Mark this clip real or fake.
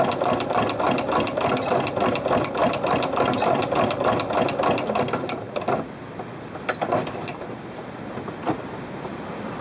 real